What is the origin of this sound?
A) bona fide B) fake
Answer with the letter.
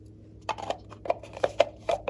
A